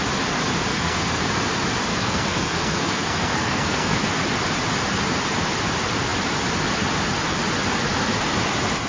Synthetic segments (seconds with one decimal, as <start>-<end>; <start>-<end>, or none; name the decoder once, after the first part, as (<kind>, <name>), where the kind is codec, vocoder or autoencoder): 0.7-1.2 (codec, SNAC); 1.9-4.0